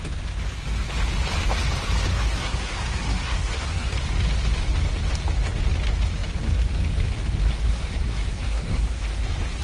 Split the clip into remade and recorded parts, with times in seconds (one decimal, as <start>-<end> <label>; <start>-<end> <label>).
0.0-2.1 recorded; 2.1-3.9 remade; 3.9-7.7 recorded; 7.7-9.1 remade; 9.1-9.6 recorded